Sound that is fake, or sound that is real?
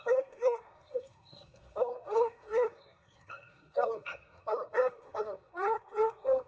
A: fake